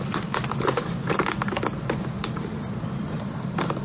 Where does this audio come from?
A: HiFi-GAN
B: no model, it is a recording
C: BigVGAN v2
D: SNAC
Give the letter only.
C